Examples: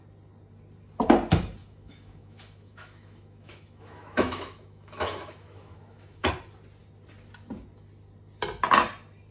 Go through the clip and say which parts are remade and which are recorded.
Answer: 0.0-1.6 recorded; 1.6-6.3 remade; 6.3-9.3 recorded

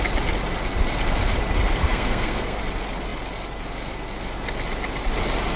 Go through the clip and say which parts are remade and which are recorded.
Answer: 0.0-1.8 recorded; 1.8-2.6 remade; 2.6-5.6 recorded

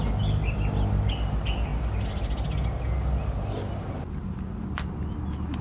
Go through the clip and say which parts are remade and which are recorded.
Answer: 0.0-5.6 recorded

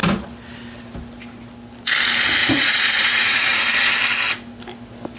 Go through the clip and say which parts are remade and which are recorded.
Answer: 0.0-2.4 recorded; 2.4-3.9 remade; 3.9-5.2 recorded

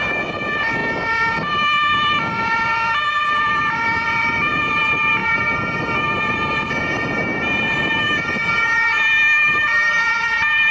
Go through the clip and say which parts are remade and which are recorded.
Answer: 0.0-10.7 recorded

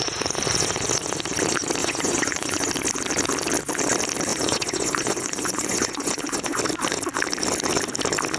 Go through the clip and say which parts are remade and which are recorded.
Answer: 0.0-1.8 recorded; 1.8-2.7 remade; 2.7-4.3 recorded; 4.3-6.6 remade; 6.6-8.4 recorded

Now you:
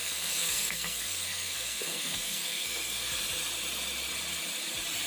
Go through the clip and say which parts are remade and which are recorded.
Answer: 0.0-3.1 remade; 3.1-5.1 recorded